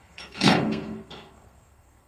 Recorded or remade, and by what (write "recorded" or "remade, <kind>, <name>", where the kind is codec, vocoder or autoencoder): remade, codec, SNAC